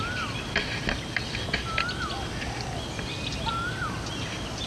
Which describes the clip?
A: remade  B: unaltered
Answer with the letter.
A